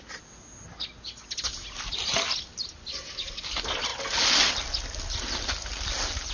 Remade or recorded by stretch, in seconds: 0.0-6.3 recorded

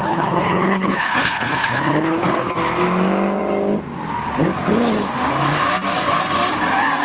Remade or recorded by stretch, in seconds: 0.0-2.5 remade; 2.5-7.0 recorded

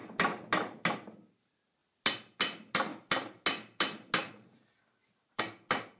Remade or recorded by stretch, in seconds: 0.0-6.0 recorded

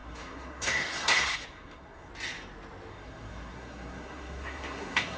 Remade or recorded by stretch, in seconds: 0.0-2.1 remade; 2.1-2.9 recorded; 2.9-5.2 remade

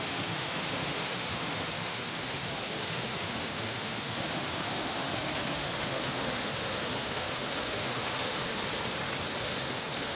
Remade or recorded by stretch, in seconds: 0.0-8.6 remade; 8.6-9.4 recorded; 9.4-10.2 remade